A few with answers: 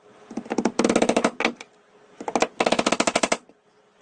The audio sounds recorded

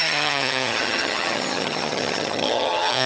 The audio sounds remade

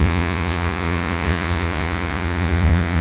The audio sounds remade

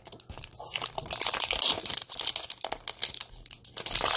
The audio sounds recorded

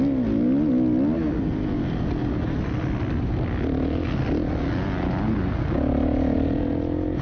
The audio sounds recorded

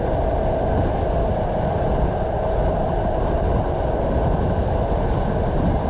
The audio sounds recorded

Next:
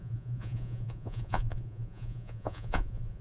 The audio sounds remade